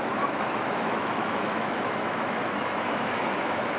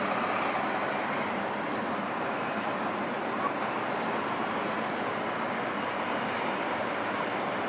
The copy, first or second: first